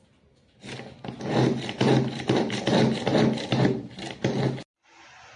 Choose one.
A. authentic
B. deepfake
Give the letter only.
A